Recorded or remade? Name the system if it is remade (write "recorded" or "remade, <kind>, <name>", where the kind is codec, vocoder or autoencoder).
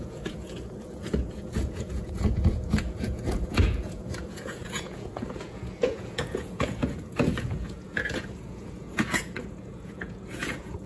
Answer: remade, vocoder, Vocos